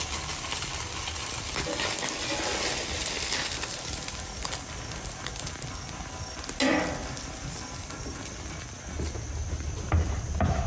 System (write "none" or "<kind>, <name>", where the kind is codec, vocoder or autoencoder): none